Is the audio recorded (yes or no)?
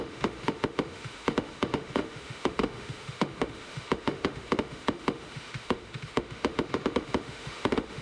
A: no